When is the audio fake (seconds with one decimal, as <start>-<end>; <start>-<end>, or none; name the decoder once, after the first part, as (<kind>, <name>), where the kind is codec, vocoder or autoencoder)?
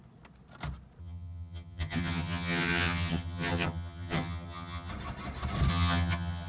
1.0-4.9 (vocoder, HiFi-GAN); 5.7-6.5